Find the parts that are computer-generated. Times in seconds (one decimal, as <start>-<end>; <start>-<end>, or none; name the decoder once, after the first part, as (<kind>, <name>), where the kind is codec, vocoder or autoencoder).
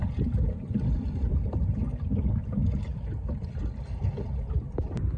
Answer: 2.9-3.6 (vocoder, BigVGAN v2)